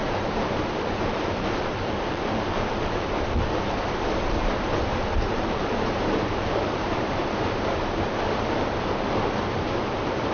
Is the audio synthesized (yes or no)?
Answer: yes